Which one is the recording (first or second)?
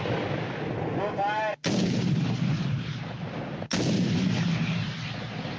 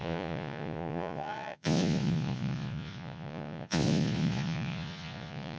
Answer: first